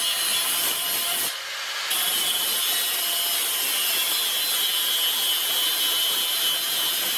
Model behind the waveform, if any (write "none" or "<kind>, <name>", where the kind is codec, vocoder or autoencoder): none